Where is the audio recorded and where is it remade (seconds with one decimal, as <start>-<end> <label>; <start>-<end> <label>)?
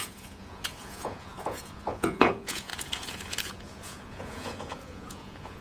0.0-5.6 remade